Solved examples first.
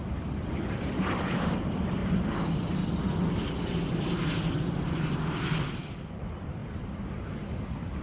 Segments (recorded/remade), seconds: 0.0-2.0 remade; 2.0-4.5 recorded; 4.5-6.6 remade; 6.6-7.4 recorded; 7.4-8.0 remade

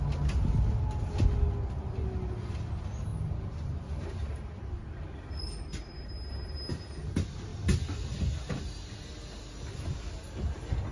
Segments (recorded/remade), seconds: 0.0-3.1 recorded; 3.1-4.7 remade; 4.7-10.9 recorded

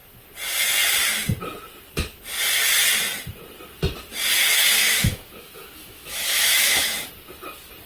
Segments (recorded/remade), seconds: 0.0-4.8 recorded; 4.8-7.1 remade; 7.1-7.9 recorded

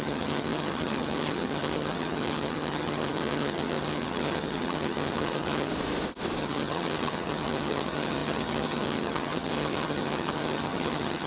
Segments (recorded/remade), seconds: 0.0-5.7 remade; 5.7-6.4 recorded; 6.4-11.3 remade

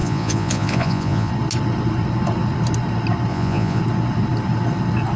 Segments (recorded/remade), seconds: 0.0-1.3 remade; 1.3-3.3 recorded; 3.3-3.8 remade; 3.8-5.2 recorded

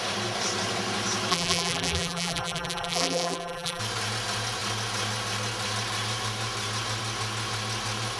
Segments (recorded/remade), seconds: 0.0-1.3 recorded; 1.3-3.8 remade; 3.8-8.2 recorded

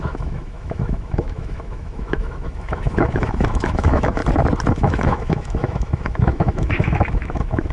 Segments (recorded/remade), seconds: 0.0-4.2 remade; 4.2-4.7 recorded; 4.7-7.7 remade

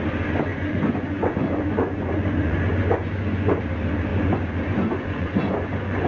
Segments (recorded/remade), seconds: 0.0-0.5 recorded; 0.5-3.6 remade; 3.6-4.1 recorded; 4.1-6.1 remade